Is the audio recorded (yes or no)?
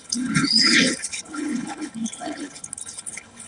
no